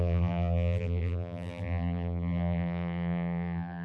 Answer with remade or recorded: remade